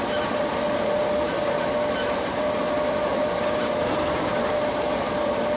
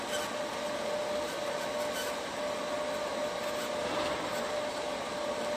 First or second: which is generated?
first